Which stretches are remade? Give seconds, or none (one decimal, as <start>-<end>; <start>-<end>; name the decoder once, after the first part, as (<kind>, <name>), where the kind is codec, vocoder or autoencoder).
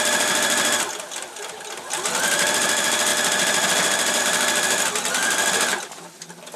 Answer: none